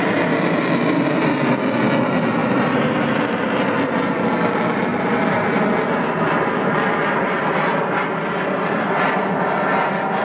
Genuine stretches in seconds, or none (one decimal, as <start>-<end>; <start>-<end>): 0.0-2.4; 3.3-4.9; 5.6-10.2